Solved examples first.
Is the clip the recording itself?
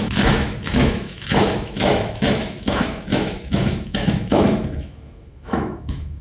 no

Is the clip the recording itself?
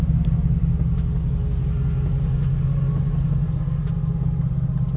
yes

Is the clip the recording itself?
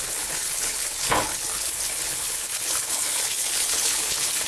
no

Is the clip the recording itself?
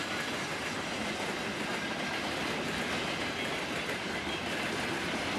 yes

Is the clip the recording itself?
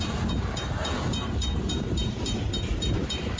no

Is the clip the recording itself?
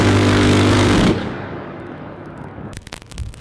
no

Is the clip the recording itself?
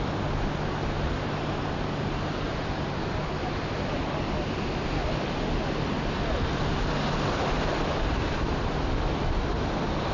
yes